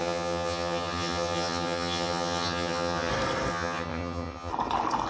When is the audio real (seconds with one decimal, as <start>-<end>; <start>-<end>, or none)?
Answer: 3.1-3.5; 4.5-5.1